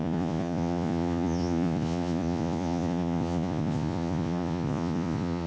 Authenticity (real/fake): fake